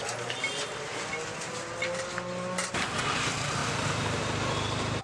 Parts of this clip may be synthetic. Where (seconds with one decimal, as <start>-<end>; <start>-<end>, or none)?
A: none